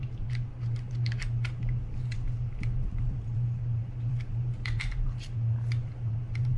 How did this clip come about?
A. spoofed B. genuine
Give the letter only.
A